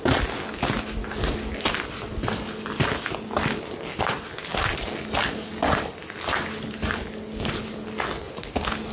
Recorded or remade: recorded